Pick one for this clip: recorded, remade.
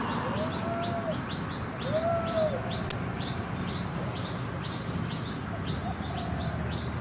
recorded